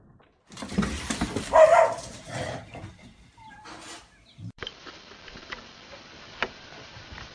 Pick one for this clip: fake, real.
fake